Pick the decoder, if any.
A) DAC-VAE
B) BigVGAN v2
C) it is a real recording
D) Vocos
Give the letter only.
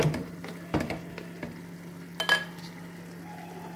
C